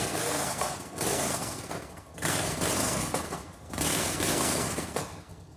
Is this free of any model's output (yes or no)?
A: no